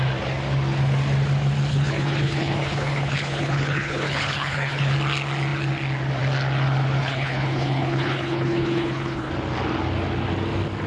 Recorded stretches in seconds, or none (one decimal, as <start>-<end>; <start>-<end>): 0.0-1.7; 4.9-7.0; 9.3-10.9